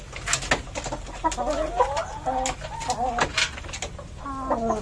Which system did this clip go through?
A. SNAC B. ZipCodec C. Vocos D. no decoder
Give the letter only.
D